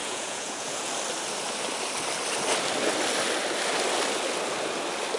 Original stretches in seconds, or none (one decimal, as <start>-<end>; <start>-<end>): 0.9-5.2